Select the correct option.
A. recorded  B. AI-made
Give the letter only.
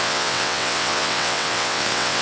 B